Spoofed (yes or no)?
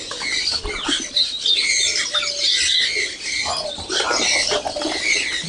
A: no